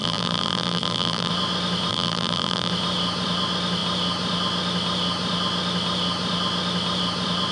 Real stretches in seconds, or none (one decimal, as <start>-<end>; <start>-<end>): 1.3-1.9; 2.7-7.5